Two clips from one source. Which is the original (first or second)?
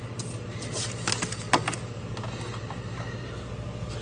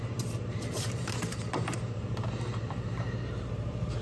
first